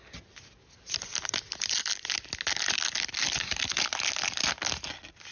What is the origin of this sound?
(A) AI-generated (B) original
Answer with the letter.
B